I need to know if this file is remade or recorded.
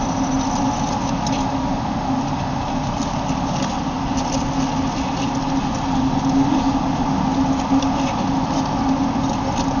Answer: recorded